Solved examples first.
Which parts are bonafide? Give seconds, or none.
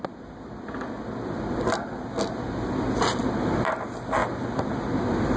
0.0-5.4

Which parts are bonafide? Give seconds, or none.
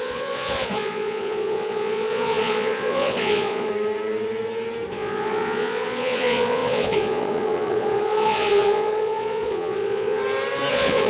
3.7-4.9; 10.2-10.7